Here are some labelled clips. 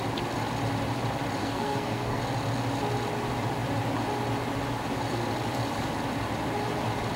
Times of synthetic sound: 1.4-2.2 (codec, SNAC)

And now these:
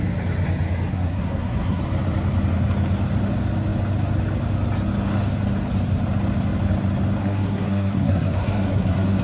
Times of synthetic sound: 0.9-1.8 (codec, SNAC); 7.2-9.2